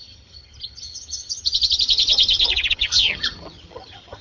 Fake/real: fake